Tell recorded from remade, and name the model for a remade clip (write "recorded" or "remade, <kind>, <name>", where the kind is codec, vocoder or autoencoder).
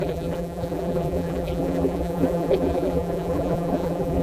remade, vocoder, BigVGAN v2